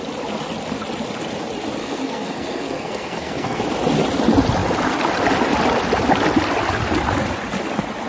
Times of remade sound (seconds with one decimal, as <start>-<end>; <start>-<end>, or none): 1.8-3.6